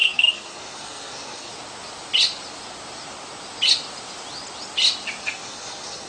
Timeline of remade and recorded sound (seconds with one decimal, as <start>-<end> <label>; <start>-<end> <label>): 0.0-1.5 remade; 1.5-5.2 recorded; 5.2-6.1 remade